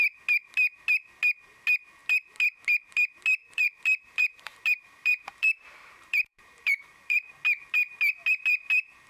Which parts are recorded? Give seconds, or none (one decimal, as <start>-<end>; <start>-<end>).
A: 0.0-3.4; 7.3-9.1